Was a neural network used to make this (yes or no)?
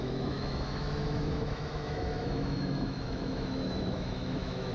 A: yes